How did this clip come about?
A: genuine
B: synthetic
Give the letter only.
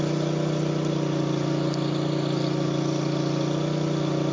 A